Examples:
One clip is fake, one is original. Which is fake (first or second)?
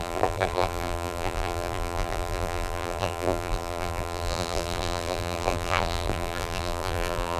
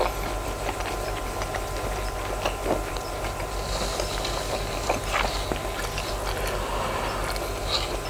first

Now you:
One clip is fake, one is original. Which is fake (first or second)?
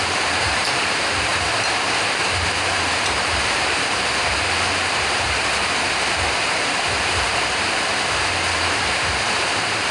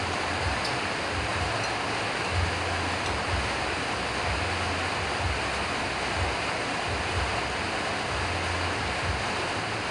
first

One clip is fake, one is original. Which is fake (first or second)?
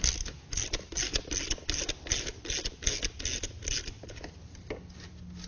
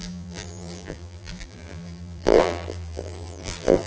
second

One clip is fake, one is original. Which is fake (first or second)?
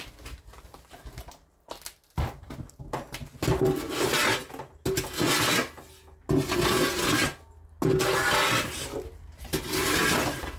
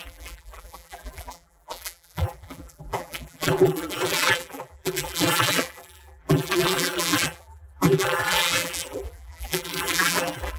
second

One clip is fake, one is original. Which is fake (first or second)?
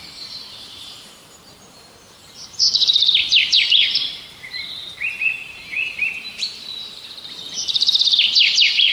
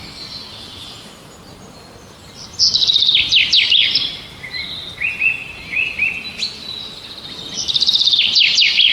first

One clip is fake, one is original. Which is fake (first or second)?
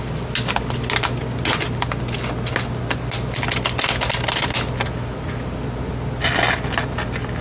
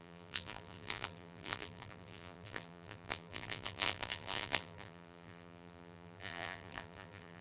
second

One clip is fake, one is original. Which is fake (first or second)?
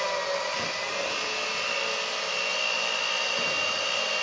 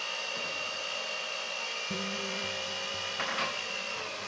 second